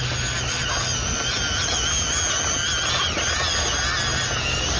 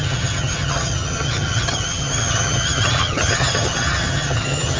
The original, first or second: first